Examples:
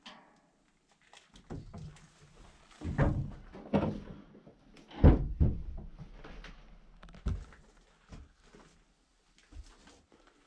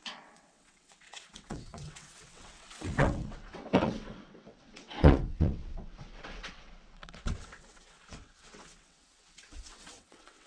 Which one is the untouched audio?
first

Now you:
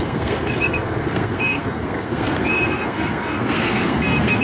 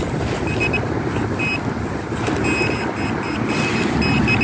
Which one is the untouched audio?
second